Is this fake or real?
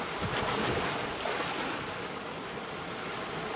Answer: real